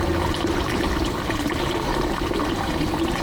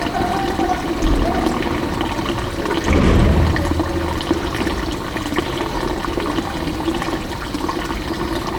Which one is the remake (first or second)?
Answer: first